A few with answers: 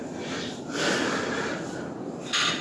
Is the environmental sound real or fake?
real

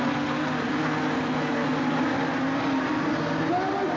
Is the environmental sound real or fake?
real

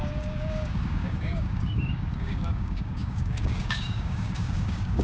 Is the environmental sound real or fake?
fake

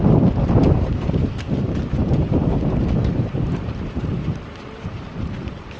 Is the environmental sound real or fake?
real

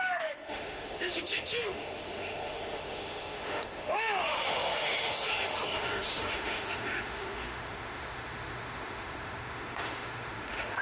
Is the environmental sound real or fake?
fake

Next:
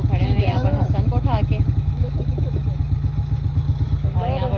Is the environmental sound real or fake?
fake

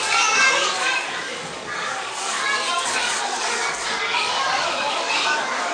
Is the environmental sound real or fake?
fake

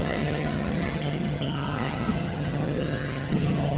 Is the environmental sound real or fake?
fake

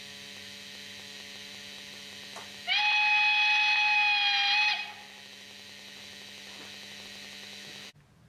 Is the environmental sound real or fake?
real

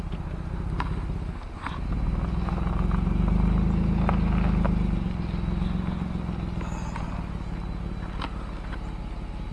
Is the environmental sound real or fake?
real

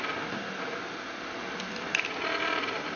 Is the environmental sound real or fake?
fake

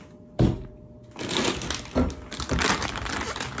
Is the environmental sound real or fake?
real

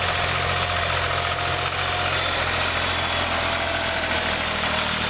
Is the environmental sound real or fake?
real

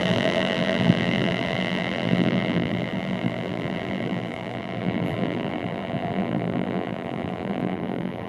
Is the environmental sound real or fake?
fake